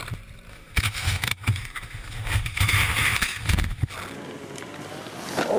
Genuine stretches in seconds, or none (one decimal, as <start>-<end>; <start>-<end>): 0.0-0.5; 3.9-5.6